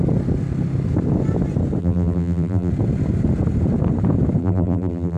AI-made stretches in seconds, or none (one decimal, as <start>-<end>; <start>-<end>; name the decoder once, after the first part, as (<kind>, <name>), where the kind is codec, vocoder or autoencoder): 1.8-2.7 (vocoder, BigVGAN v2); 4.4-5.2